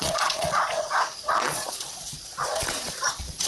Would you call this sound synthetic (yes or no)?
yes